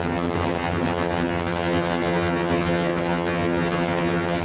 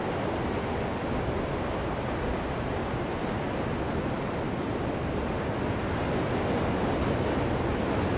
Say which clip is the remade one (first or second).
first